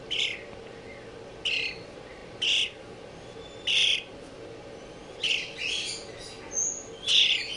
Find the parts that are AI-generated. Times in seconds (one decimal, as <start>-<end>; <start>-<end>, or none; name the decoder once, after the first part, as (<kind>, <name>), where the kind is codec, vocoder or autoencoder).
none